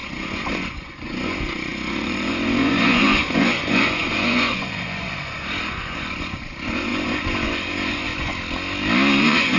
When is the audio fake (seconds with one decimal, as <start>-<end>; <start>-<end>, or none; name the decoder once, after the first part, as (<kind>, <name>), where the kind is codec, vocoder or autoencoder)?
0.0-8.3 (vocoder, Vocos); 9.2-9.6